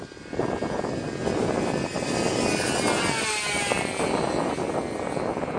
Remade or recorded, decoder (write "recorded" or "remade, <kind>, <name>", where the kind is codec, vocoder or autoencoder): recorded